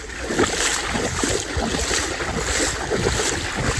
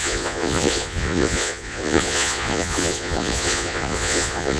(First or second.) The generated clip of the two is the second